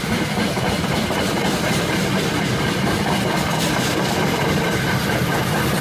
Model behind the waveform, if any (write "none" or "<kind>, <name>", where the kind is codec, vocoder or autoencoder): none